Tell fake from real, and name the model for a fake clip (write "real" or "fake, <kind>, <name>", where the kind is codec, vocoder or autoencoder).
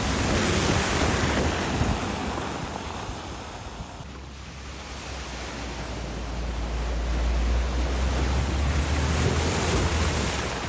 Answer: real